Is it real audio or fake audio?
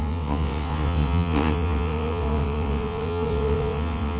fake